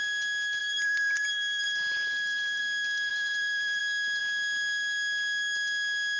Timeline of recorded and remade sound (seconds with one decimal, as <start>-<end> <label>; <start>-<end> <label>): 0.0-0.6 recorded; 0.6-2.6 remade; 2.6-3.1 recorded; 3.1-3.8 remade; 3.8-6.2 recorded